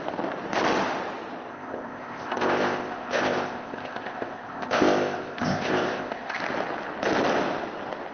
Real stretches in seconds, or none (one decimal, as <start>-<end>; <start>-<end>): 0.0-1.5; 6.4-8.1